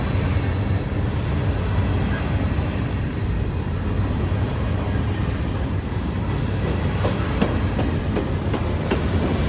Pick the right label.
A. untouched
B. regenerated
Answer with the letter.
A